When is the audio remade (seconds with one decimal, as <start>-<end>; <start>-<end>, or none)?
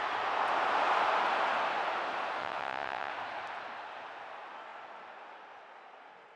2.4-3.1